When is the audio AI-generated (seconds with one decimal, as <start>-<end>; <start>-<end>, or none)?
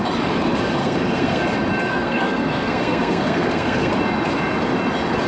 0.8-1.4; 1.9-3.9